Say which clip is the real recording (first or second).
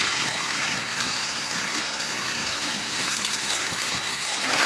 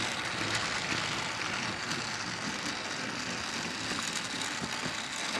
second